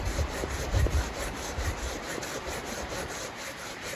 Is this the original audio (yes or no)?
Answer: no